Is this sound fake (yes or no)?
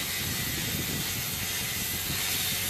no